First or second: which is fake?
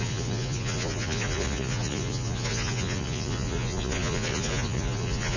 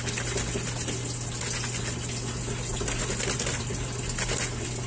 first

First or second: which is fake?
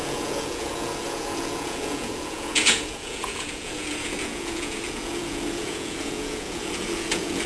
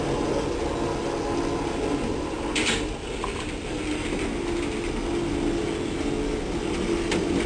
first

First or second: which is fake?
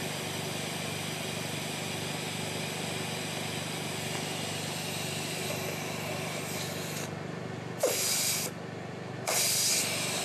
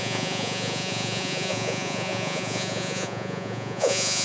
second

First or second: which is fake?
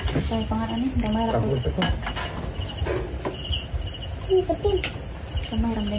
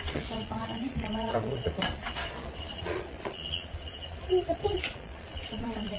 second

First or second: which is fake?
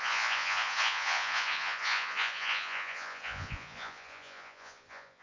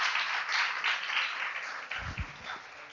first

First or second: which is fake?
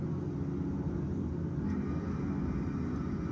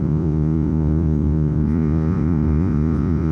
second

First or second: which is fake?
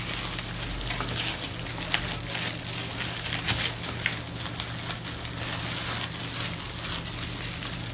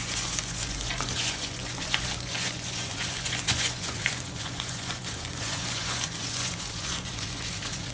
second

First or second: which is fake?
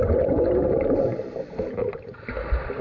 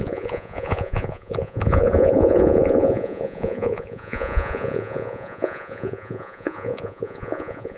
second